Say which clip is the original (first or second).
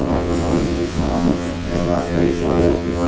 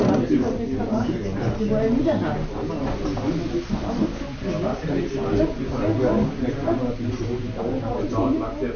second